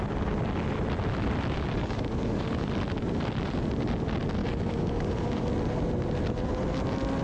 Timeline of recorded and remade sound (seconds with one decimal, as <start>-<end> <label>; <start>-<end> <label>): 0.0-1.8 recorded; 1.8-2.7 remade; 2.7-4.4 recorded; 4.4-5.5 remade; 5.5-7.2 recorded